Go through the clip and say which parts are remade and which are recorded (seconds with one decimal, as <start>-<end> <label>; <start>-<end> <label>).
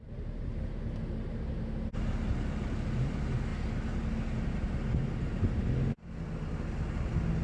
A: 0.0-7.4 recorded